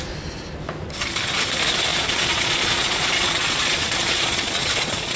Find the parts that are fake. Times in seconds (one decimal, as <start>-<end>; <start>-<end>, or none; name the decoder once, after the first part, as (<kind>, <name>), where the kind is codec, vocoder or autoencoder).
1.9-5.2 (vocoder, Vocos)